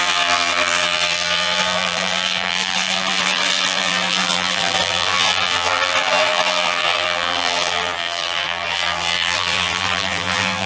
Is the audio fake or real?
fake